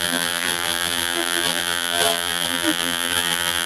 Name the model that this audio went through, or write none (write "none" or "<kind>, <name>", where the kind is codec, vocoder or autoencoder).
vocoder, BigVGAN v2